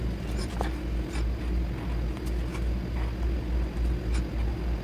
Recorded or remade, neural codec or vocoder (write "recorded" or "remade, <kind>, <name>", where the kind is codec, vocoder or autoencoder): recorded